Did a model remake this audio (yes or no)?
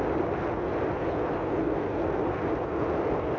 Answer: no